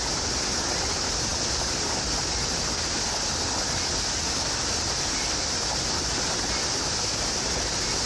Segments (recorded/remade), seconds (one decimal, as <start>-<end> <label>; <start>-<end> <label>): 0.0-8.1 recorded

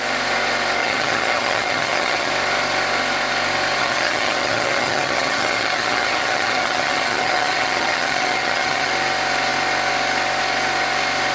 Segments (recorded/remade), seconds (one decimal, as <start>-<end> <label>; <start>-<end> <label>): 0.0-0.8 recorded; 0.8-2.3 remade; 2.3-3.8 recorded; 3.8-8.9 remade; 8.9-11.3 recorded

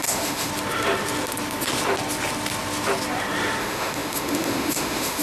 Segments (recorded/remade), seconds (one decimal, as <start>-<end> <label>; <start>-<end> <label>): 0.0-0.5 remade; 0.5-3.6 recorded; 3.6-5.2 remade

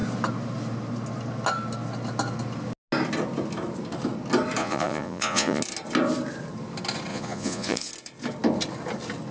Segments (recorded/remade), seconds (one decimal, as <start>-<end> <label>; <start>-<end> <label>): 0.0-4.6 recorded; 4.6-5.6 remade; 5.6-7.1 recorded; 7.1-7.9 remade; 7.9-9.3 recorded

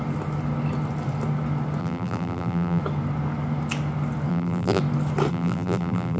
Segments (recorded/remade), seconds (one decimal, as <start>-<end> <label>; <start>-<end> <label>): 0.0-1.8 recorded; 1.8-2.8 remade; 2.8-4.3 recorded; 4.3-4.8 remade; 4.8-5.3 recorded; 5.3-6.2 remade

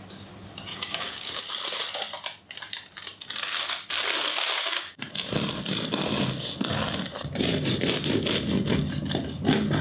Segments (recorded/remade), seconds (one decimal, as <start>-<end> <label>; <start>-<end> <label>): 0.0-0.7 recorded; 0.7-1.4 remade; 1.4-4.3 recorded; 4.3-5.0 remade; 5.0-9.8 recorded

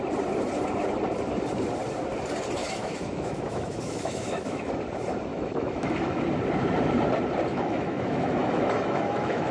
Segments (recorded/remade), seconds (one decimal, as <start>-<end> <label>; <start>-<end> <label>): 0.0-2.6 recorded; 2.6-4.7 remade; 4.7-5.3 recorded; 5.3-6.2 remade; 6.2-7.5 recorded; 7.5-9.5 remade

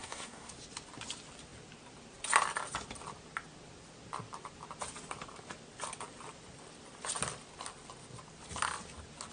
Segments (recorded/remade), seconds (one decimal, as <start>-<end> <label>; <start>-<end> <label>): 0.0-0.5 remade; 0.5-9.3 recorded